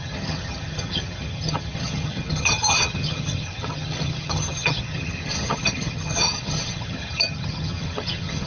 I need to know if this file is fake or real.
fake